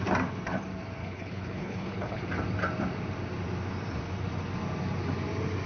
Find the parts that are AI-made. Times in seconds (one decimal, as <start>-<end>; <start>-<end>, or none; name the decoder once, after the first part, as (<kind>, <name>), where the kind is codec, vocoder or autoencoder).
1.0-2.2 (codec, HILCodec)